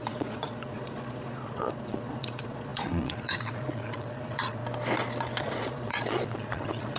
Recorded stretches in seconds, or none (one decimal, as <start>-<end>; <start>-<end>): 4.6-5.4